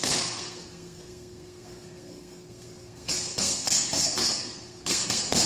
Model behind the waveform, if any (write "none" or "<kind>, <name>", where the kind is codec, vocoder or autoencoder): codec, SNAC